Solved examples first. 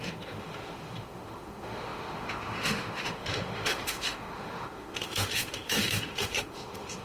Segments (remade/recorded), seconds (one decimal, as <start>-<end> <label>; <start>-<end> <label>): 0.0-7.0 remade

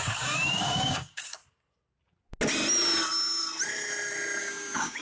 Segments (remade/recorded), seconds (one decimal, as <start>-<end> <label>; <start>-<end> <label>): 0.0-1.4 remade; 1.4-4.4 recorded; 4.4-5.0 remade

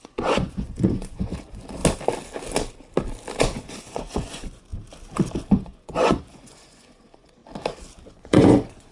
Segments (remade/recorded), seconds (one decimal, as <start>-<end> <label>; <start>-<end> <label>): 0.0-1.8 remade; 1.8-3.4 recorded; 3.4-4.7 remade; 4.7-5.5 recorded; 5.5-7.4 remade; 7.4-8.1 recorded; 8.1-8.9 remade

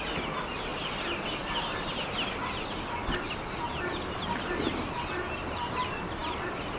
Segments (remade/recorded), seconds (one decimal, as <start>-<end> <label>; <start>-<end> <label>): 0.0-6.8 recorded

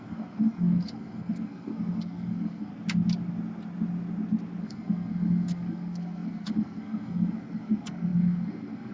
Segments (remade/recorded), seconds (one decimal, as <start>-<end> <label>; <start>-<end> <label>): 0.0-2.7 remade; 2.7-4.6 recorded; 4.6-8.9 remade